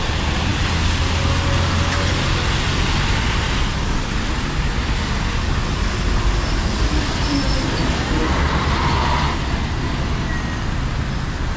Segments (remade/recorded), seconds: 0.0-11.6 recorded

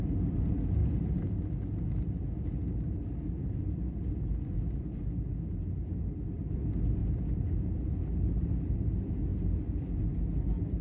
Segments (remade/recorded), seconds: 0.0-10.8 recorded

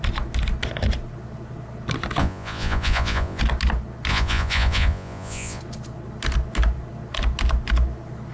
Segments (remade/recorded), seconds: 0.0-2.2 recorded; 2.2-3.4 remade; 3.4-4.1 recorded; 4.1-5.6 remade; 5.6-8.3 recorded

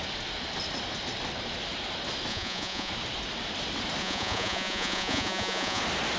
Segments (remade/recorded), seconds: 0.0-2.3 recorded; 2.3-2.9 remade; 2.9-4.0 recorded; 4.0-5.8 remade; 5.8-6.2 recorded

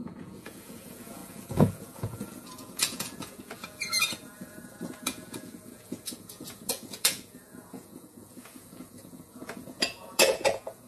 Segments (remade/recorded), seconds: 0.0-10.9 remade

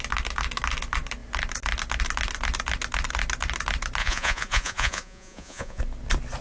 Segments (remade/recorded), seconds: 0.0-4.0 recorded; 4.0-5.8 remade; 5.8-6.4 recorded